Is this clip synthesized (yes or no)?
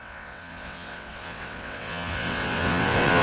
yes